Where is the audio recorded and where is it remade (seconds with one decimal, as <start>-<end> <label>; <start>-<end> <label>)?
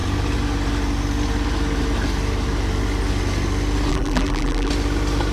0.0-3.9 recorded; 3.9-4.7 remade; 4.7-5.3 recorded